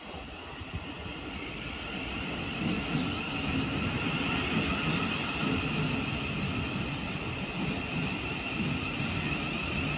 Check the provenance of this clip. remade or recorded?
recorded